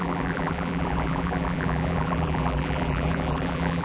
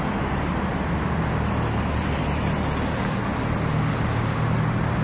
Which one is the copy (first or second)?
first